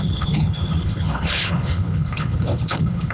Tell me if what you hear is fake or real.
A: fake